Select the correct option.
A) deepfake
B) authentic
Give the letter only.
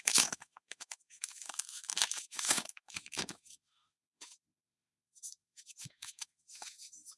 A